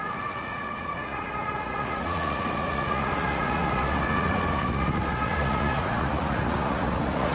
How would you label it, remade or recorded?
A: remade